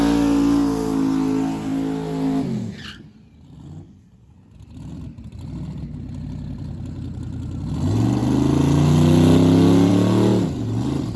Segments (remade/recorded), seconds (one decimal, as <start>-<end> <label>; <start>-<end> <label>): 0.0-11.2 recorded